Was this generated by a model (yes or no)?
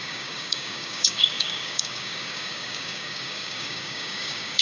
yes